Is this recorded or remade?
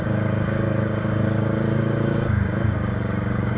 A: remade